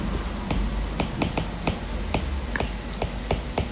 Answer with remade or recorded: recorded